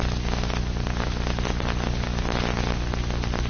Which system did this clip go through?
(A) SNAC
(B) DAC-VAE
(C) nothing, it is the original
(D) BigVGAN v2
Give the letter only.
C